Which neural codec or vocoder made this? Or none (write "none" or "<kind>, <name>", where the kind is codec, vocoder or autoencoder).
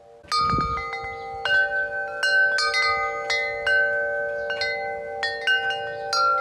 none